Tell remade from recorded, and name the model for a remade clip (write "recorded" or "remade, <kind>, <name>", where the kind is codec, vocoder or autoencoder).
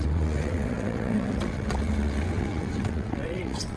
remade, vocoder, WaveNeXt